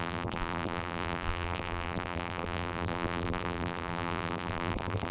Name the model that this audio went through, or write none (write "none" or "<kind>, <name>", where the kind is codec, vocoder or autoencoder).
vocoder, BigVGAN v2